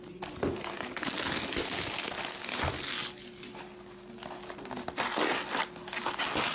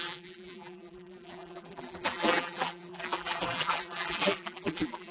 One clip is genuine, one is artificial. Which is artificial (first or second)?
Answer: second